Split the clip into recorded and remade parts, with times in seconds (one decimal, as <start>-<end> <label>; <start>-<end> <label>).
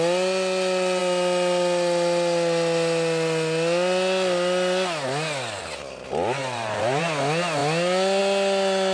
0.0-6.4 recorded; 6.4-7.0 remade; 7.0-8.9 recorded